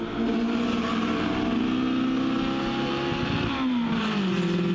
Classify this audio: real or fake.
real